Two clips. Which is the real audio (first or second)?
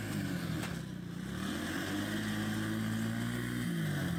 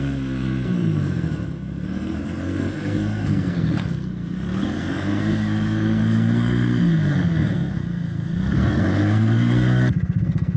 first